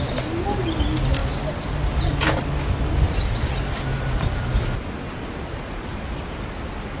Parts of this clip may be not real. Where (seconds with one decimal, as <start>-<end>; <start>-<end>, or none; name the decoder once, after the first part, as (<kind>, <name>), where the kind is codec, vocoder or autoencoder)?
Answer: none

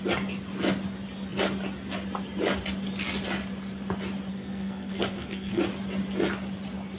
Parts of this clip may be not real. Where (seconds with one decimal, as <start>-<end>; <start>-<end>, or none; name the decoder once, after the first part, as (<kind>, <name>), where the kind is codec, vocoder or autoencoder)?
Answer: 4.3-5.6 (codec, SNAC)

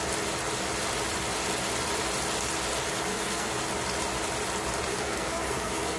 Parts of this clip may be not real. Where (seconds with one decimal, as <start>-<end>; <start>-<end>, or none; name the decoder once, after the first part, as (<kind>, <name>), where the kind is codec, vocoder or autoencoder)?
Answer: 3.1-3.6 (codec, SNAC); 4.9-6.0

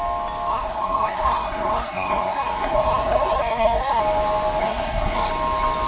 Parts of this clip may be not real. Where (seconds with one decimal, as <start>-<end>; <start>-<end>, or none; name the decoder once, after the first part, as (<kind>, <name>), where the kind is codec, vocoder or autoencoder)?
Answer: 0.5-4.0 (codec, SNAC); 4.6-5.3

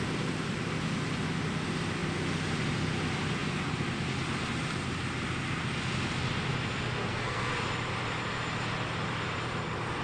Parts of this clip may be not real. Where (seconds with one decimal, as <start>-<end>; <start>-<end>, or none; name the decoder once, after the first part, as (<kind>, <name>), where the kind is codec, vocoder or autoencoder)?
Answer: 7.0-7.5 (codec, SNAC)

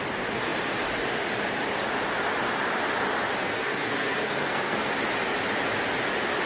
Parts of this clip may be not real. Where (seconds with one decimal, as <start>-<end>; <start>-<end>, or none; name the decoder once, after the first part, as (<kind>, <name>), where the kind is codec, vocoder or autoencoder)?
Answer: 3.4-4.9 (codec, SNAC)

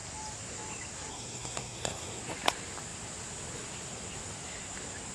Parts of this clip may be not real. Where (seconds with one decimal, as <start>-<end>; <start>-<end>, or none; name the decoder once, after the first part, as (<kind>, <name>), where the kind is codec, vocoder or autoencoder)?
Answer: 1.1-2.2 (codec, SNAC)